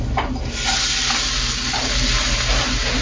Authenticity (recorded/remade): recorded